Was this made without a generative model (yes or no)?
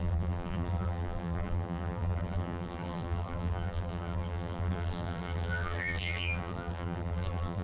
no